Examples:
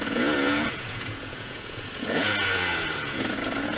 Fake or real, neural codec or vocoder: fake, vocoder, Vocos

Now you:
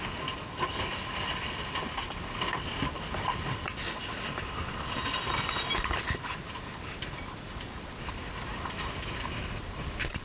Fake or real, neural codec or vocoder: real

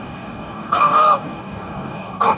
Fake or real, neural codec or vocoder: fake, codec, DAC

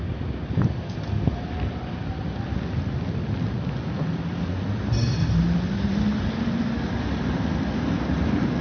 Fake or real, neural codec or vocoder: real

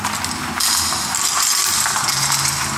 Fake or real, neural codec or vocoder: real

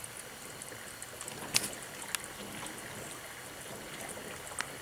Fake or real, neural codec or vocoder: real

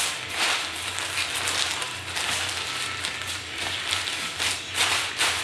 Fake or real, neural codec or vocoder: real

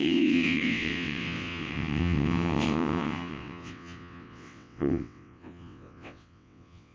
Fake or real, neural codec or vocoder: fake, vocoder, WaveNeXt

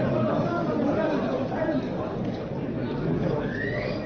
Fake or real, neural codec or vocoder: real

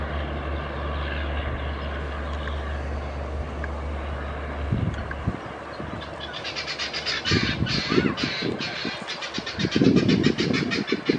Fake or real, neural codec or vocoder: real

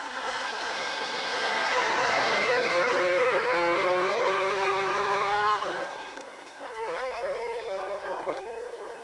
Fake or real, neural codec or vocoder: fake, codec, SNAC